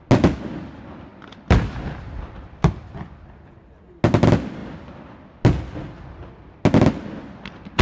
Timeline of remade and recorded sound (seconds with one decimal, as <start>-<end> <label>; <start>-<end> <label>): 0.0-7.8 recorded